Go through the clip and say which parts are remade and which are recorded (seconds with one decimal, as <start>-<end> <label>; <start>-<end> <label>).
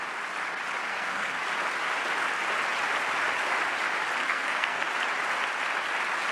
0.0-0.9 recorded; 0.9-1.4 remade; 1.4-4.2 recorded; 4.2-4.9 remade; 4.9-6.3 recorded